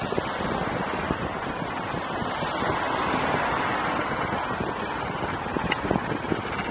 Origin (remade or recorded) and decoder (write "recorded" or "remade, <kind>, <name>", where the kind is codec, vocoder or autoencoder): recorded